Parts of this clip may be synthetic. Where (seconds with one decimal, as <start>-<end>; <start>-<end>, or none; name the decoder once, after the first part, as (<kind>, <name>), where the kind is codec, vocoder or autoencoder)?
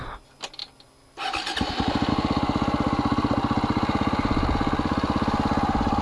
none